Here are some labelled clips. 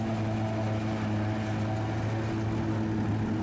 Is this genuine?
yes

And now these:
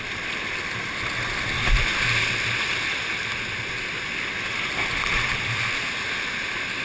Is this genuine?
yes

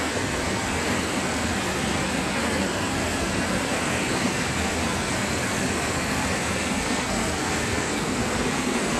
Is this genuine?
no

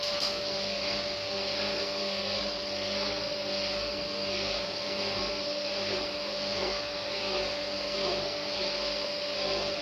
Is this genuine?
no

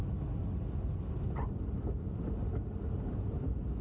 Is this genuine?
yes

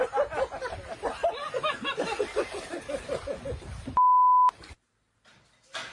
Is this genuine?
yes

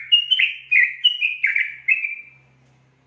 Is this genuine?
yes